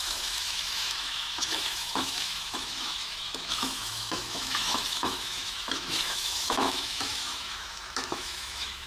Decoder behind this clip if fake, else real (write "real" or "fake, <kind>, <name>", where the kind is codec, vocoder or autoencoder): fake, autoencoder, DAC-VAE